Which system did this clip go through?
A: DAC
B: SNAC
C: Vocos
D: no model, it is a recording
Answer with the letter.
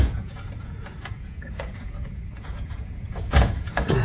C